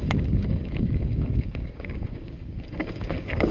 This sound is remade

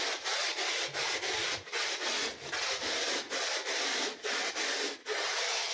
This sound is recorded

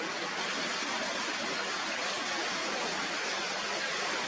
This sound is recorded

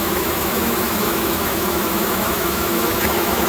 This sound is remade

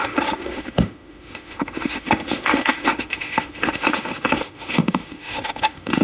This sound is remade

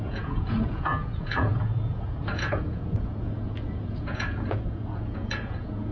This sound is remade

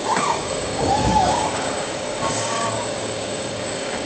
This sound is remade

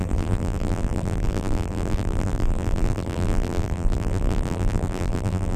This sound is remade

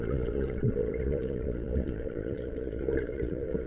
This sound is remade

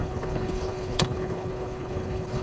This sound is remade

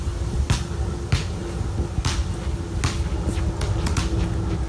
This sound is recorded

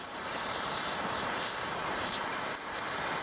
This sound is remade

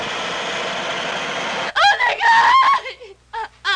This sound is recorded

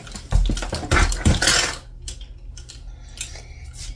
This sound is recorded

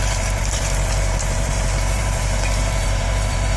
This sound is remade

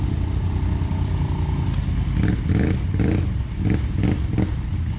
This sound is recorded